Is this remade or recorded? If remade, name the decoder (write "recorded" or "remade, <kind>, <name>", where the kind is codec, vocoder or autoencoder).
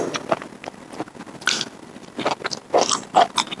recorded